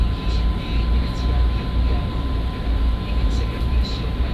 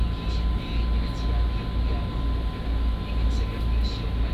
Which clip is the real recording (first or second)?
second